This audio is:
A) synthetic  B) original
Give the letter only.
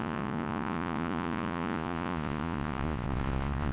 A